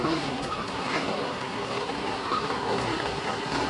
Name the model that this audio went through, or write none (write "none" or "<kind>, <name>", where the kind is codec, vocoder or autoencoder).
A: codec, SNAC